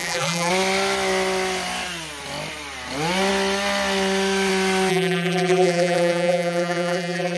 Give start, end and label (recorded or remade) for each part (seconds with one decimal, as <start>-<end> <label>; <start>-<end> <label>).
0.0-0.5 remade; 0.5-4.9 recorded; 4.9-7.4 remade